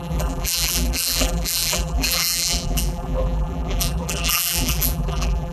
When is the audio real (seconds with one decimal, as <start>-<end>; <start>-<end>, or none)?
none